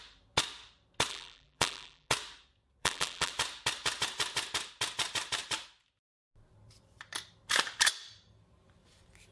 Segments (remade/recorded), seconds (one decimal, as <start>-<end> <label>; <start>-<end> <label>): 0.0-1.1 recorded; 1.1-2.1 remade; 2.1-2.8 recorded; 2.8-3.3 remade; 3.3-9.3 recorded